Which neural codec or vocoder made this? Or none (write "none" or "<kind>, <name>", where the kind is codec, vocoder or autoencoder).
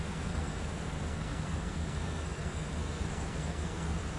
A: codec, SNAC